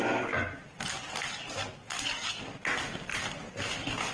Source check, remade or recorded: recorded